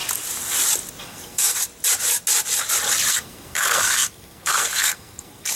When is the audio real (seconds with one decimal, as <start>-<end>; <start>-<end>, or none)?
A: 0.0-1.0; 1.6-3.1